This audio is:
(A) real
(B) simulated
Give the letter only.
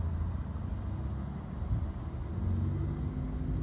A